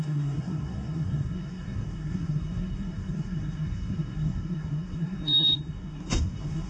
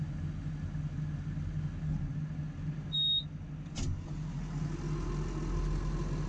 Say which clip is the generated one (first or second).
first